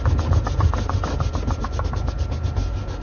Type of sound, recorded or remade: recorded